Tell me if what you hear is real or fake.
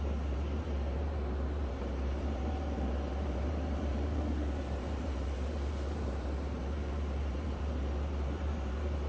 fake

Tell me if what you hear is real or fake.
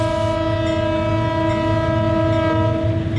real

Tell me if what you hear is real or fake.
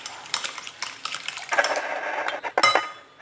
real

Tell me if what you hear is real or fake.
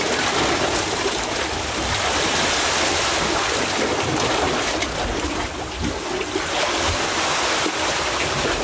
real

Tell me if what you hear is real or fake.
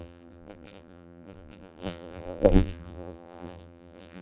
fake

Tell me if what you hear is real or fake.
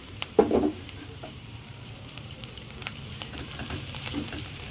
fake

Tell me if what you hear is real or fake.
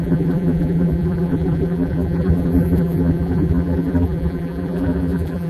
fake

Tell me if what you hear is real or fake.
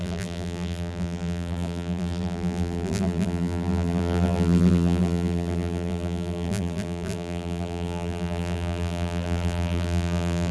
fake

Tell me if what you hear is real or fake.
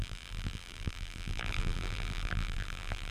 fake